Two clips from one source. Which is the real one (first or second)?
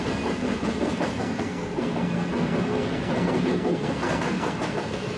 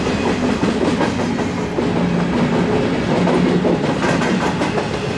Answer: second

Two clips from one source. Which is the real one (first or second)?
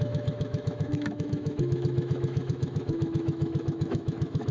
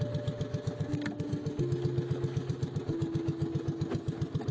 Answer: second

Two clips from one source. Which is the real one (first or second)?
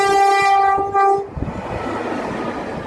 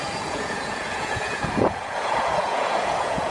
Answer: first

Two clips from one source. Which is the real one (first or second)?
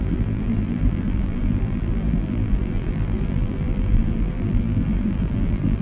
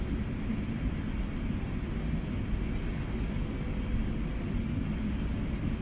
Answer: second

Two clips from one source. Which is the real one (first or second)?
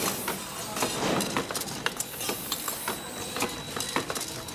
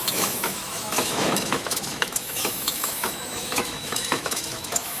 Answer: first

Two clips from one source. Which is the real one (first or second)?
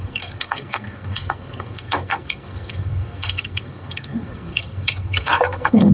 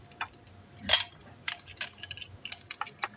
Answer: second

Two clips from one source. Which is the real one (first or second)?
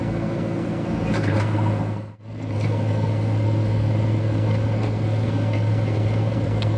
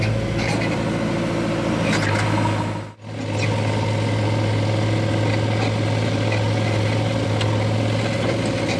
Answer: second